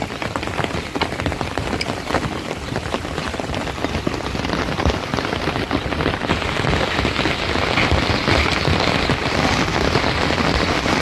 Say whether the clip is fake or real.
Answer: real